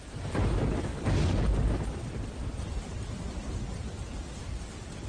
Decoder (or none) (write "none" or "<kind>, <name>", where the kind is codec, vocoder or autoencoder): none